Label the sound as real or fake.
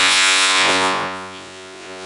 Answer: fake